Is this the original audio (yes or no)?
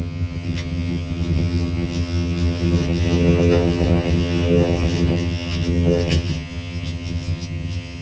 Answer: no